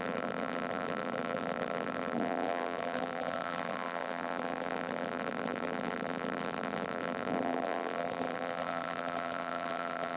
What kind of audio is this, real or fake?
fake